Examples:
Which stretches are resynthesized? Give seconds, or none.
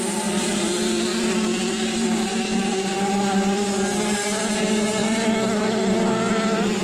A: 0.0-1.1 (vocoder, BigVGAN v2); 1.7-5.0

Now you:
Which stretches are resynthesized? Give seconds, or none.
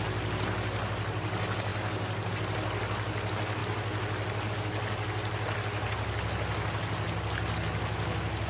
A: none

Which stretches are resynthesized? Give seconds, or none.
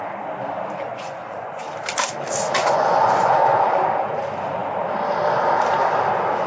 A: 0.9-1.6 (vocoder, Vocos); 2.6-3.8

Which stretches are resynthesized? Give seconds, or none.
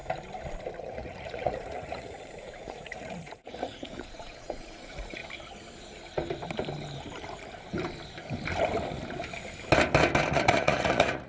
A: 0.8-5.2 (vocoder, Vocos); 10.3-11.3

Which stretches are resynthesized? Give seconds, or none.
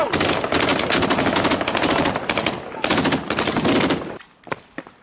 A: 0.7-3.3 (vocoder, BigVGAN v2)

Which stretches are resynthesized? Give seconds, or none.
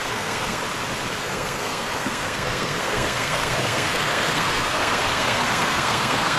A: 0.0-0.6 (codec, SNAC); 1.2-6.4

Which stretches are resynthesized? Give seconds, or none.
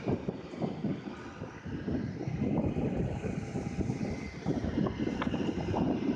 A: 0.0-0.9 (vocoder, BigVGAN v2); 3.0-6.2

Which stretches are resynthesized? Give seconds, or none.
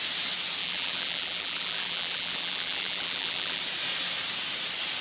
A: 0.6-3.6 (vocoder, BigVGAN v2)